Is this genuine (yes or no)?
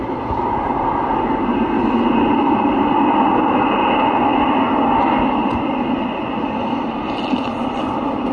yes